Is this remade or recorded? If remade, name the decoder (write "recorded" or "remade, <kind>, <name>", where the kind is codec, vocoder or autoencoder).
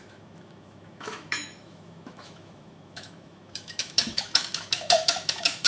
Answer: remade, autoencoder, DAC-VAE